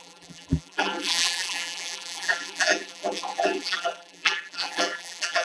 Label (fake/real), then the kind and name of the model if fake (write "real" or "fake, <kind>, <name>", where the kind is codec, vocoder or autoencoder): fake, vocoder, BigVGAN v2